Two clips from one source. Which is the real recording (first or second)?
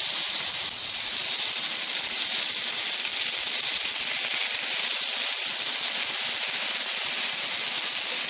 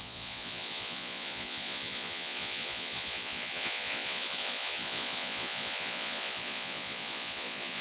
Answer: first